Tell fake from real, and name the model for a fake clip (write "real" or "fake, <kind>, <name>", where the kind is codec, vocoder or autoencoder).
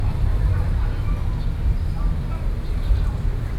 real